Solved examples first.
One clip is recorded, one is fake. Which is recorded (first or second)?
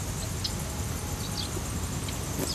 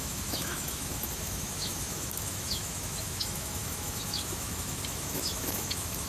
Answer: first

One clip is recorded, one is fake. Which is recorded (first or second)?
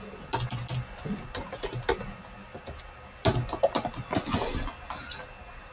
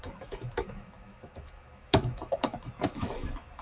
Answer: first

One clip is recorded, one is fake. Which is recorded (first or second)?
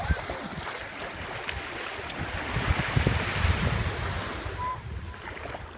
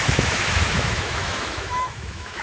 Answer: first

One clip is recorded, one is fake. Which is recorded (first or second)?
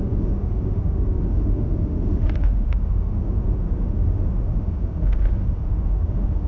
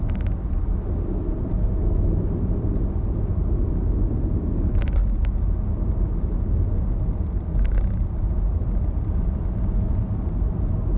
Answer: second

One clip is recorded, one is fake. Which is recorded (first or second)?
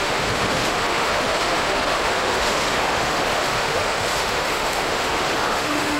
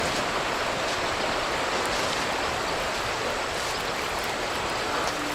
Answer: second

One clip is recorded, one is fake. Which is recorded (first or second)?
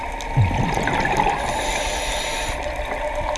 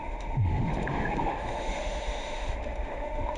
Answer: first